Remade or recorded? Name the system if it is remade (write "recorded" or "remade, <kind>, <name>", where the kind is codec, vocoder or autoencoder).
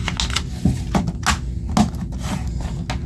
recorded